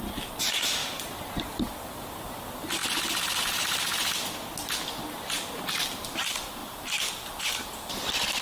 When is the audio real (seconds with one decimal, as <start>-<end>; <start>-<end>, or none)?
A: 0.0-8.4